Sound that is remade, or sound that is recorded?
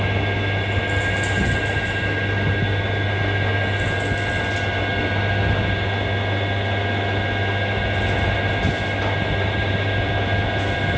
recorded